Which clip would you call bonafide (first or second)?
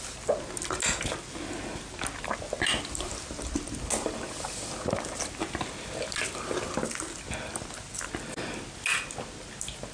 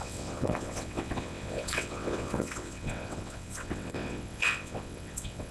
first